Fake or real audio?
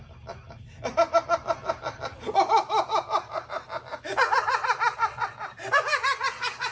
real